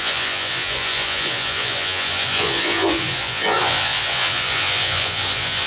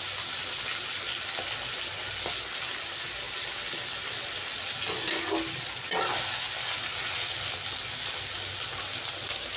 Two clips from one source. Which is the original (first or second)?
second